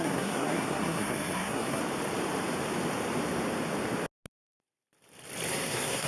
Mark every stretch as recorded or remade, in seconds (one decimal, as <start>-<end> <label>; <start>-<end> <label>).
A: 0.0-1.8 remade; 1.8-5.5 recorded; 5.5-6.1 remade